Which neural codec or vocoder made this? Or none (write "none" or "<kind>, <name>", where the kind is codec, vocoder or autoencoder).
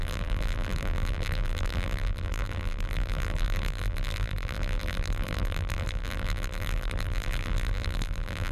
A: vocoder, BigVGAN v2